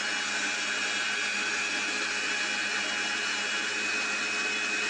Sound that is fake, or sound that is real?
real